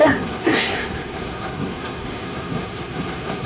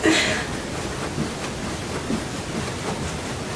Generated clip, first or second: first